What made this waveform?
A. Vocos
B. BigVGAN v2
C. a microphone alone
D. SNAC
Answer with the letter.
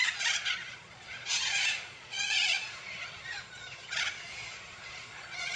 A